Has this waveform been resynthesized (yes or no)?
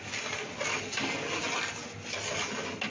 no